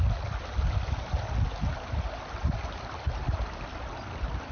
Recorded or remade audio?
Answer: recorded